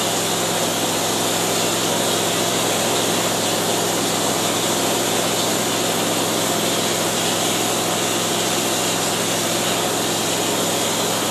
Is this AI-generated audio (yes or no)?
no